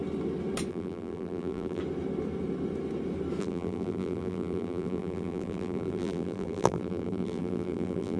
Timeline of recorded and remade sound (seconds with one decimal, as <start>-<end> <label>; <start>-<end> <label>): 0.0-0.7 recorded; 0.7-1.8 remade; 1.8-3.4 recorded; 3.4-8.2 remade